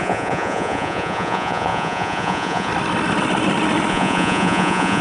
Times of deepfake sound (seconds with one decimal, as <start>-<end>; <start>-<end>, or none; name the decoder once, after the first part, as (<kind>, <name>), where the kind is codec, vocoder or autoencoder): 0.0-2.7 (vocoder, Vocos); 3.9-5.0